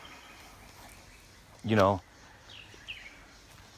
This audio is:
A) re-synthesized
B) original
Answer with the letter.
B